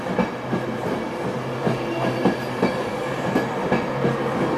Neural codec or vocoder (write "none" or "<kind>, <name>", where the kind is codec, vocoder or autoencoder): none